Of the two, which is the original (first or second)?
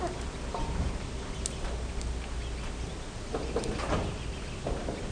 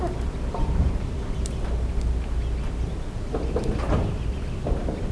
first